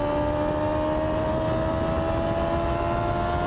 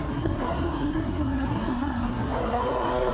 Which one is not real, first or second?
second